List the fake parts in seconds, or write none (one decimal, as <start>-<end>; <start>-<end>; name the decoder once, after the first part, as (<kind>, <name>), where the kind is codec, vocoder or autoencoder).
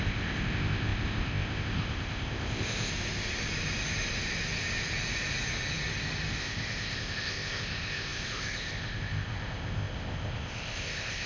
0.0-2.9 (codec, ZipCodec); 6.4-11.3